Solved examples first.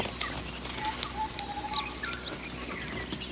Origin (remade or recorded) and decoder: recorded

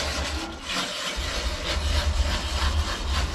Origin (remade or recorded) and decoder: recorded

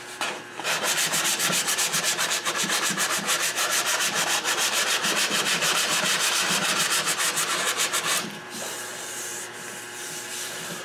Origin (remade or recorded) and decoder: remade, vocoder, BigVGAN v2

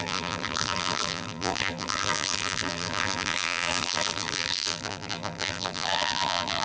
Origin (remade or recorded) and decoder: remade, vocoder, BigVGAN v2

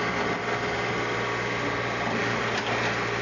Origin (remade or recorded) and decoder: recorded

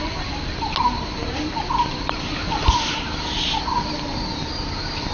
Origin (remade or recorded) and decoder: recorded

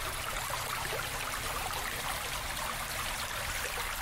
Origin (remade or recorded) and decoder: recorded